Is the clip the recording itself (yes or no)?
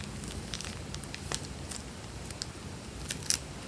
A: yes